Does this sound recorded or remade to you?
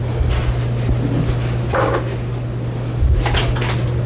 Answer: recorded